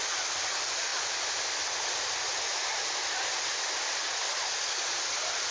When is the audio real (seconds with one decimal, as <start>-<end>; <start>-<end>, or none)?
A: 0.0-5.5